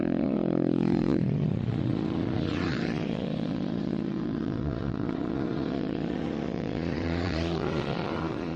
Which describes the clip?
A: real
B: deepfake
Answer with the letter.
B